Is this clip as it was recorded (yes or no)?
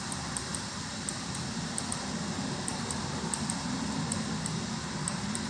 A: yes